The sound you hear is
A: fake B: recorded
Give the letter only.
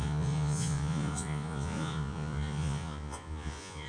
A